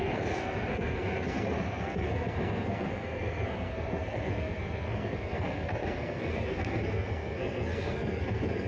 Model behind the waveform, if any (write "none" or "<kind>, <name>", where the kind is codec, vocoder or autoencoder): codec, SNAC